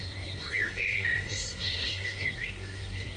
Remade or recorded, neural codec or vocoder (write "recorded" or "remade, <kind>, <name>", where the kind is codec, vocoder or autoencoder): remade, codec, SNAC